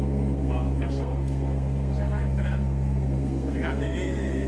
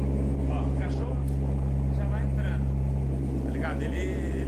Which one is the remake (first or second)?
first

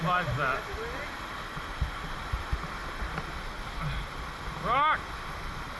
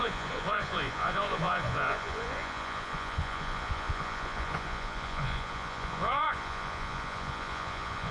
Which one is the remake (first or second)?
second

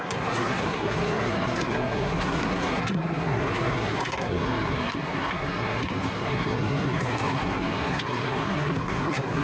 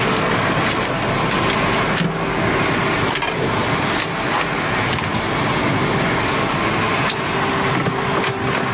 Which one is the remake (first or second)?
first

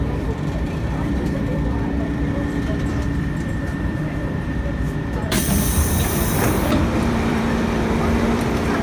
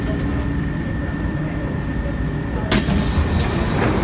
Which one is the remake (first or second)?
first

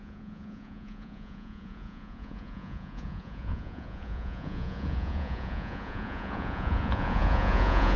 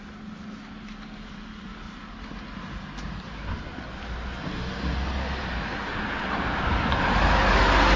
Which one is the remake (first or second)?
first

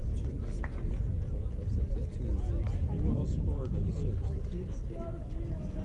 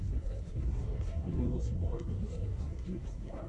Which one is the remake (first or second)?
second